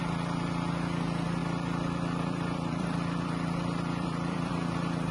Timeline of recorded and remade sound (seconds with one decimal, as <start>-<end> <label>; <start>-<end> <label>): 0.0-1.4 recorded; 1.4-4.5 remade; 4.5-5.1 recorded